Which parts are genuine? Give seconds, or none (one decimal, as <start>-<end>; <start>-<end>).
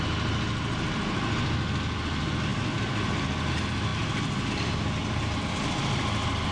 0.0-2.5; 3.1-5.0; 5.8-6.5